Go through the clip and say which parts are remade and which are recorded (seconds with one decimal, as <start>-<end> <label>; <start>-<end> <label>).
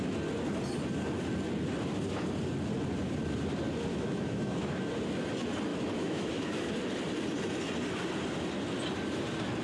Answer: 0.0-3.9 recorded; 3.9-4.9 remade; 4.9-5.7 recorded; 5.7-6.7 remade; 6.7-9.6 recorded